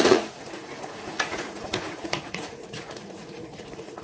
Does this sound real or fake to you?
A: fake